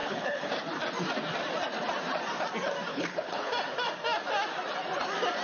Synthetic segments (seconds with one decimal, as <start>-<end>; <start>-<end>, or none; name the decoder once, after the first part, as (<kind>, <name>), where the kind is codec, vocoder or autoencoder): 0.0-0.5 (codec, HILCodec); 2.9-3.5